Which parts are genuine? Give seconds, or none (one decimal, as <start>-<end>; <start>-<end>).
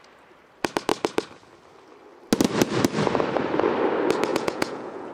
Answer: 0.0-4.3